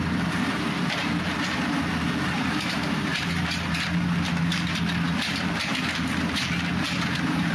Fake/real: fake